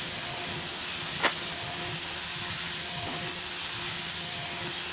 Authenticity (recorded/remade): recorded